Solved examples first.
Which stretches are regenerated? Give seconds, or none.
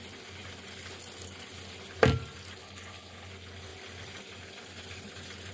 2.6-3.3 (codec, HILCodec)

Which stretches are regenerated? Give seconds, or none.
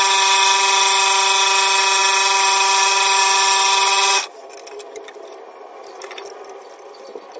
none